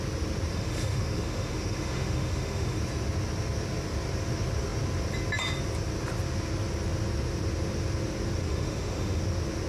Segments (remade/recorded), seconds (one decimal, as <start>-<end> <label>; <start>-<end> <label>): 0.0-0.5 recorded; 0.5-2.8 remade; 2.8-8.4 recorded; 8.4-9.2 remade; 9.2-9.7 recorded